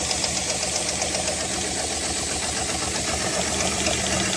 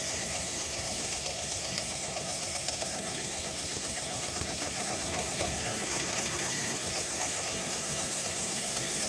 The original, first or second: first